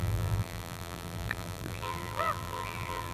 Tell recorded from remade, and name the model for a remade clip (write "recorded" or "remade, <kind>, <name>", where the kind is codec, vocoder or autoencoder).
remade, vocoder, BigVGAN v2